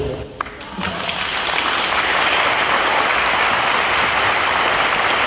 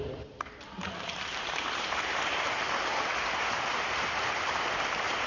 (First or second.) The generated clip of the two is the second